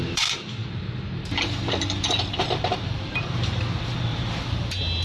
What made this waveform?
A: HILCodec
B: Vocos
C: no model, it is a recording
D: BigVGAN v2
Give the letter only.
D